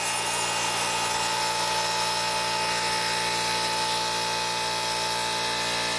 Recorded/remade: recorded